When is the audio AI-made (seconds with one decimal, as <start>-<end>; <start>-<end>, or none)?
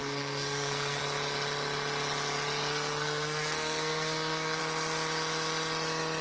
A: 0.0-1.0; 2.7-4.6